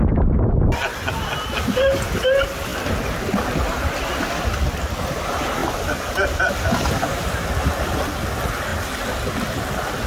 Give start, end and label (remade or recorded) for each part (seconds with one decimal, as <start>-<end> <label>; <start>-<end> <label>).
0.0-10.1 recorded